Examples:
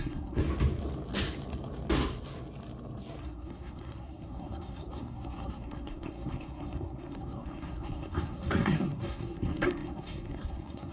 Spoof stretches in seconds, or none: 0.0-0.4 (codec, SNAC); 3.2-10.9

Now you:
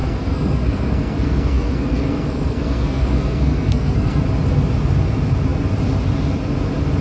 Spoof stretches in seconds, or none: 0.0-4.2 (codec, SNAC)

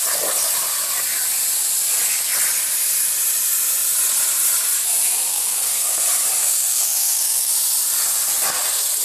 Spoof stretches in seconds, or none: 5.3-6.0 (codec, SNAC); 6.4-7.5

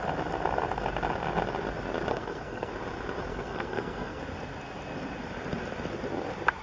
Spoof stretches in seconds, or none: 2.1-2.7 (codec, SNAC); 3.3-4.2

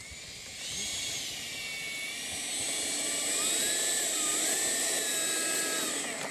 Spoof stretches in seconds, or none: none

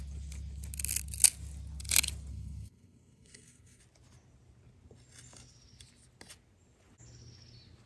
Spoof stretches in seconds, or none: 2.3-3.8 (codec, SNAC)